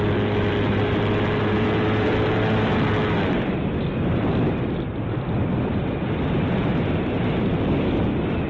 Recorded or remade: recorded